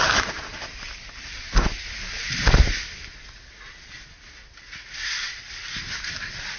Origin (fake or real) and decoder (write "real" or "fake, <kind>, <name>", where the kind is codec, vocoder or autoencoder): real